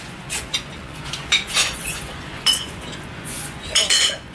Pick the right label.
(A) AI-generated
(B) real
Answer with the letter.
A